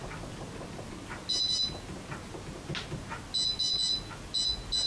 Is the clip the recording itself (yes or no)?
yes